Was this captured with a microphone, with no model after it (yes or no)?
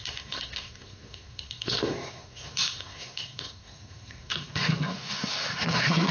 no